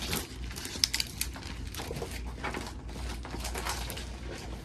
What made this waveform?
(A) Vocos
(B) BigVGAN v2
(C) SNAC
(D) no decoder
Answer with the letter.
D